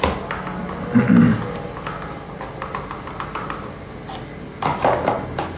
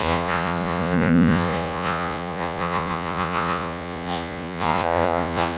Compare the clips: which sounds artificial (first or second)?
second